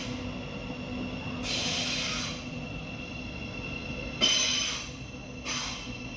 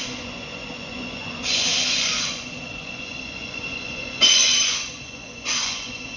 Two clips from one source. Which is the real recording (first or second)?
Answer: first